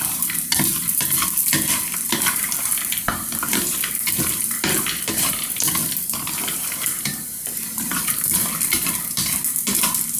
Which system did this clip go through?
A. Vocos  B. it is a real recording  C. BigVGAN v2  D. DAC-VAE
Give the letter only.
C